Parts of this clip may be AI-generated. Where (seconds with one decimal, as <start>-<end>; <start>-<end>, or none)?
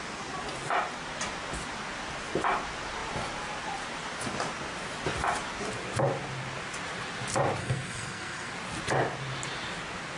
7.6-8.5